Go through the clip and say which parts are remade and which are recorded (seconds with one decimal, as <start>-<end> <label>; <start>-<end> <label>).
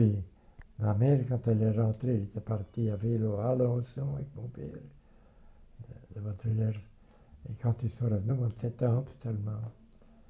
0.0-0.8 remade; 0.8-2.7 recorded; 2.7-4.2 remade; 4.2-5.9 recorded; 5.9-6.5 remade; 6.5-8.3 recorded; 8.3-9.1 remade; 9.1-10.3 recorded